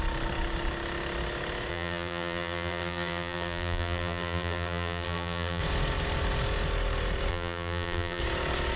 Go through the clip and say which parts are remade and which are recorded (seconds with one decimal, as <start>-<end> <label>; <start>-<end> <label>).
0.0-1.7 recorded; 1.7-5.6 remade; 5.6-7.3 recorded; 7.3-8.2 remade; 8.2-8.8 recorded

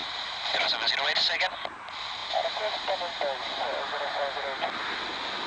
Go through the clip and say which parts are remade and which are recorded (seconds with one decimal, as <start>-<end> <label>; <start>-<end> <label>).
0.0-0.7 remade; 0.7-5.5 recorded

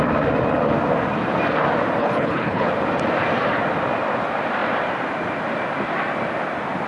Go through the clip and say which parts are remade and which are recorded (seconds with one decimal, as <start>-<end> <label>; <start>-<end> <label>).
0.0-2.0 recorded; 2.0-2.7 remade; 2.7-6.9 recorded

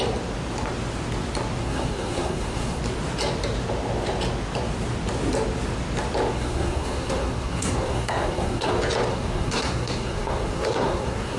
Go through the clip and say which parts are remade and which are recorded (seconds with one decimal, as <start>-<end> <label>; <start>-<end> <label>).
0.0-1.6 recorded; 1.6-2.8 remade; 2.8-6.3 recorded; 6.3-8.7 remade; 8.7-9.1 recorded; 9.1-11.4 remade

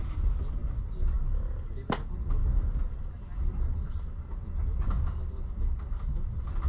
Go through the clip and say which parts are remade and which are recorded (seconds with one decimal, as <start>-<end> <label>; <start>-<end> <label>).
0.0-6.7 recorded